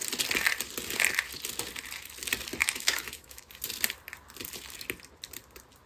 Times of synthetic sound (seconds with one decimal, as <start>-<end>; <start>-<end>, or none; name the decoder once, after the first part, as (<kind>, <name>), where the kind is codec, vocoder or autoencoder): 2.6-3.5 (autoencoder, DAC-VAE)